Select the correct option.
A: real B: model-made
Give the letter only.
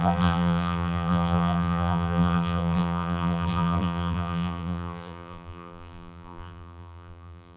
B